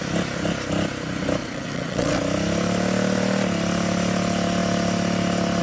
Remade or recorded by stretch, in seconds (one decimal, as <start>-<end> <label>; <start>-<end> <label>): 0.0-1.4 recorded; 1.4-2.2 remade; 2.2-5.6 recorded